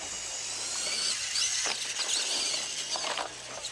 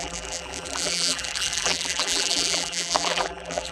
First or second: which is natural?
first